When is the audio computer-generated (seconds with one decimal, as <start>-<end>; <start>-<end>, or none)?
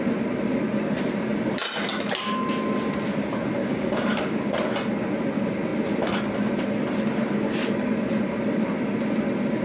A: 3.6-4.6